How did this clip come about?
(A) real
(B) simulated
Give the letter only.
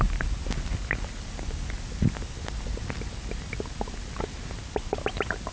A